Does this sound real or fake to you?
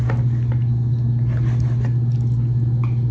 real